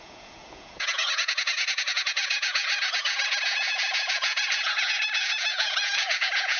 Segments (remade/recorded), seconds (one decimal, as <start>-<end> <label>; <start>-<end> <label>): 0.0-6.6 remade